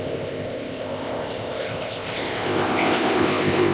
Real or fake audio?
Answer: fake